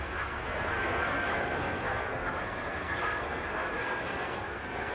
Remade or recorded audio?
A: remade